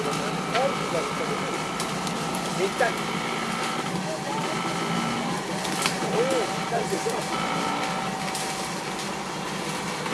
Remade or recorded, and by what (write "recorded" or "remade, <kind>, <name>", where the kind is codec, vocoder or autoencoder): recorded